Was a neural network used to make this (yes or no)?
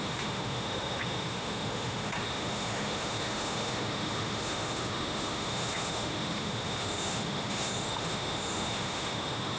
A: yes